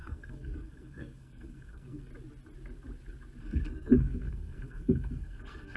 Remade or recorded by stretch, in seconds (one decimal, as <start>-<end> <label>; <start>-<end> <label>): 0.0-2.1 remade; 2.1-3.4 recorded; 3.4-5.8 remade